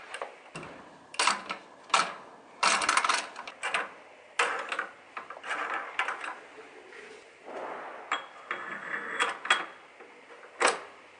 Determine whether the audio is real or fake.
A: real